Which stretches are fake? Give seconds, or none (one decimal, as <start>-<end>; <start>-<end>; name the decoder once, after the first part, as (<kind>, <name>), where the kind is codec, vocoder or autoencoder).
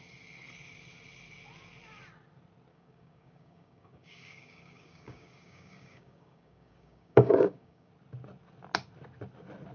2.7-7.9 (codec, DAC)